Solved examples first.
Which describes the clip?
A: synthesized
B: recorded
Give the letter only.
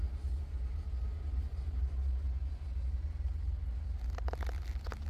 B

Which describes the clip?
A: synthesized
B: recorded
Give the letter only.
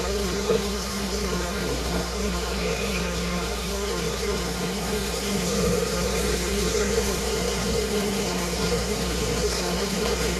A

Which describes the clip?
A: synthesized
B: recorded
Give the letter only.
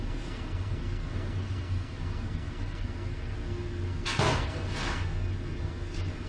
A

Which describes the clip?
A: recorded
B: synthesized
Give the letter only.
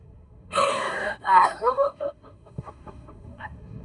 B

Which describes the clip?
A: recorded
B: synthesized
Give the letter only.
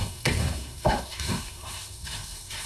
B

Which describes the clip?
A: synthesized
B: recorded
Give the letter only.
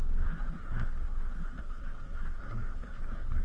A